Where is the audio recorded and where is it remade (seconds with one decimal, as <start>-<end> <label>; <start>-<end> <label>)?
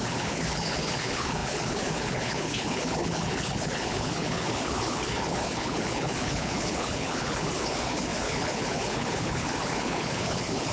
0.0-10.7 remade